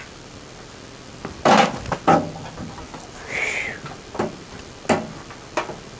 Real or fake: real